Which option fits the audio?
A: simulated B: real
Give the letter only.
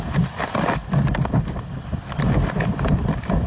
B